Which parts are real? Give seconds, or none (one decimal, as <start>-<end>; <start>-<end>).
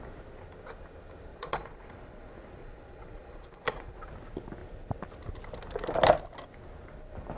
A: 0.0-1.3; 4.1-7.4